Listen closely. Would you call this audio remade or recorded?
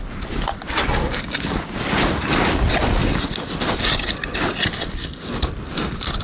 recorded